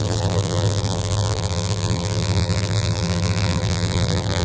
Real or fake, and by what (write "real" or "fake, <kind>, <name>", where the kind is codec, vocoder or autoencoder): fake, vocoder, BigVGAN v2